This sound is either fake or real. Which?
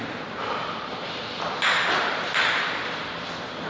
real